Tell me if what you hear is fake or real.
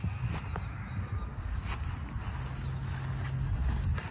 real